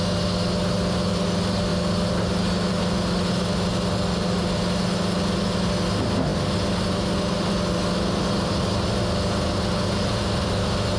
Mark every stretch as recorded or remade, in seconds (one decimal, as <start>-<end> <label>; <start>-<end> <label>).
0.0-11.0 recorded